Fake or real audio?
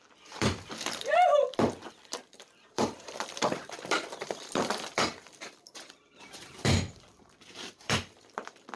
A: fake